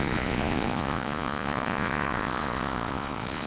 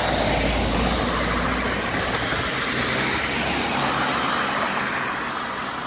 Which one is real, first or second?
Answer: second